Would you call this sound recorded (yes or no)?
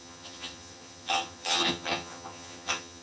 no